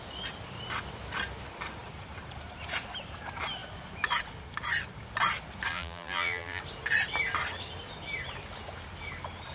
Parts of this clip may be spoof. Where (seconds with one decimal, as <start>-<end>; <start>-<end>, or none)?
5.7-6.6

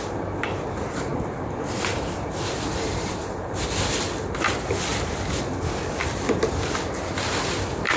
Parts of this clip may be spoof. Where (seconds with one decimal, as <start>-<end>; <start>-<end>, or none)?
1.1-3.2; 4.9-7.4

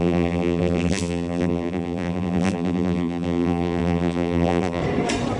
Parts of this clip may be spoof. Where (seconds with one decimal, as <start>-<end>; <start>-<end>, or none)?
0.0-4.8

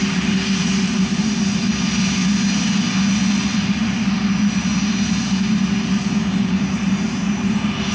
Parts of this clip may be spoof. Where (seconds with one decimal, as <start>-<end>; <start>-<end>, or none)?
0.0-2.2; 6.4-7.9

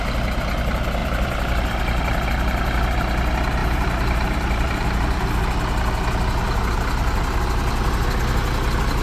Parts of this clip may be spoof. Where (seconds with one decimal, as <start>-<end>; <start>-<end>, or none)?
1.0-1.7; 3.6-5.3